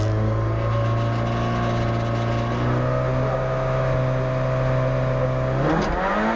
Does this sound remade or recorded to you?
recorded